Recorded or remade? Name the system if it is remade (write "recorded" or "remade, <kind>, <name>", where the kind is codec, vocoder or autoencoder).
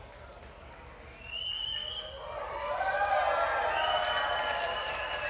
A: recorded